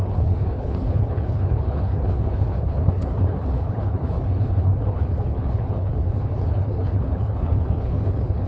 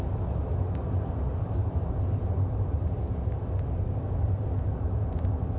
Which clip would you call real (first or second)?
second